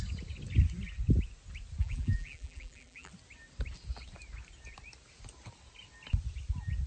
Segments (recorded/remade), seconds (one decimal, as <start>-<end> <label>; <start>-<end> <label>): 0.0-1.8 recorded; 1.8-3.1 remade; 3.1-6.9 recorded